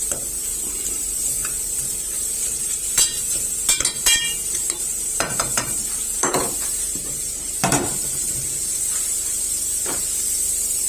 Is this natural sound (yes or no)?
no